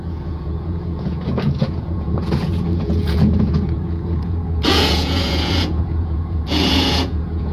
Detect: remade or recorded remade